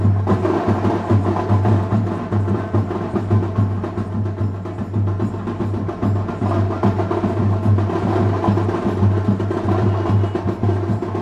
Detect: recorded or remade recorded